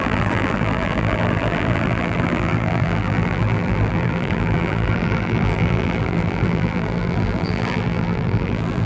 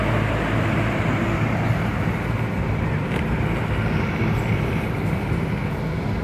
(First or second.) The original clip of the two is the second